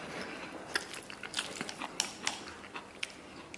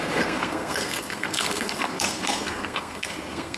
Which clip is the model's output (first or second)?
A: second